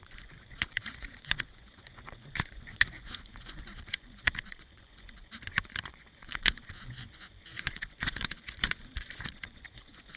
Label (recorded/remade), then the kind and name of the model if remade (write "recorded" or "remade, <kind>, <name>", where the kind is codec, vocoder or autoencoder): remade, vocoder, Vocos